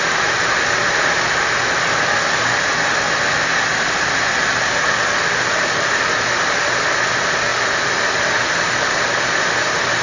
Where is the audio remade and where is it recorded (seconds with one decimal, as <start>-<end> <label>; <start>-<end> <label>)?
0.0-10.0 recorded